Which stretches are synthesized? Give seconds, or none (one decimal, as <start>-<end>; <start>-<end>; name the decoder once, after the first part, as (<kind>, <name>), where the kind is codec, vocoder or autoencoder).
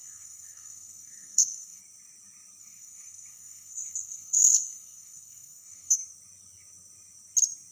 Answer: 0.0-1.8 (codec, SNAC); 2.6-5.9